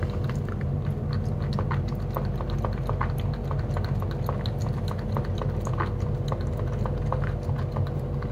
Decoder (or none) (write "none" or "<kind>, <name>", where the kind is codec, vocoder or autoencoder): none